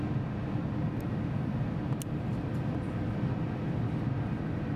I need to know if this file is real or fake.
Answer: real